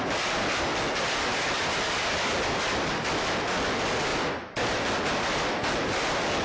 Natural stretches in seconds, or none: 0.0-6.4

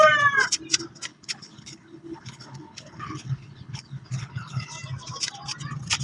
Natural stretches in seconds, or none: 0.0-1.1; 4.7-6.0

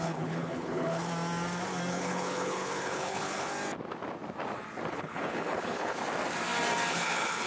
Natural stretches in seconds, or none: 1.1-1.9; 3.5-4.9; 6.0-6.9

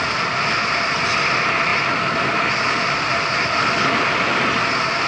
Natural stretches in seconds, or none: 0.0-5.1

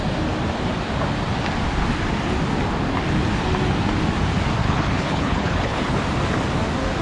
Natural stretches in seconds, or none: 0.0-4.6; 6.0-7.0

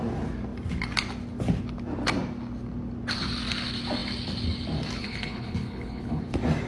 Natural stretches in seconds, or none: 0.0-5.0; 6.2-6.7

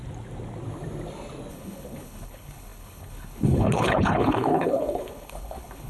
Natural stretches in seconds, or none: 0.0-1.5

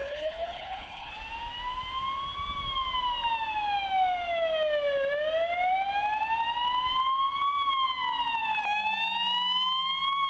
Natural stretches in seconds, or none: 1.1-10.3